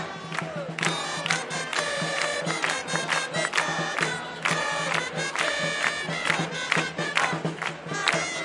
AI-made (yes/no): no